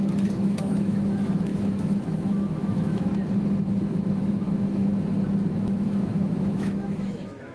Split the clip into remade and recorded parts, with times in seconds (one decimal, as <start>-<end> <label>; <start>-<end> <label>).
0.0-3.1 remade; 3.1-3.9 recorded; 3.9-4.9 remade; 4.9-5.5 recorded; 5.5-7.5 remade